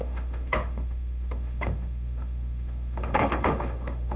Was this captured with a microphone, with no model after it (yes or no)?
no